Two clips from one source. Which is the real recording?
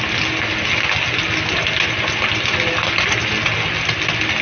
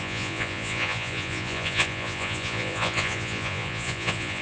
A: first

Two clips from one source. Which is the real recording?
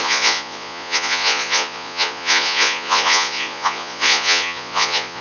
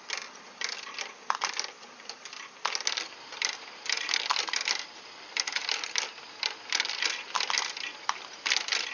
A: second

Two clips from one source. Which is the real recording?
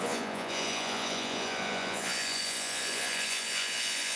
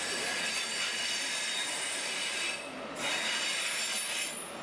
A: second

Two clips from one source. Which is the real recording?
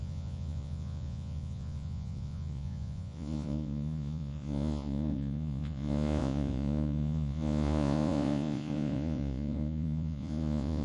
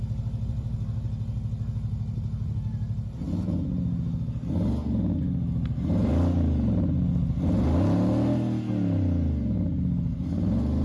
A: second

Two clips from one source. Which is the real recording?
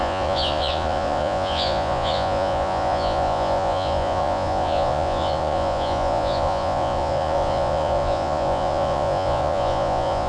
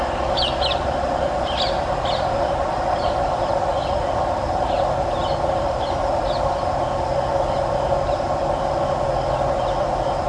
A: second